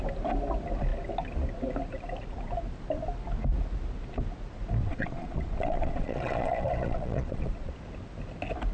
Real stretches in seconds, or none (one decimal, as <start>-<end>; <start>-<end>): 0.0-4.8; 7.7-8.7